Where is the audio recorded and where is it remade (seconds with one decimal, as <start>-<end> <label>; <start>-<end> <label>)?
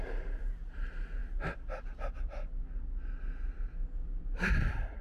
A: 0.0-5.0 recorded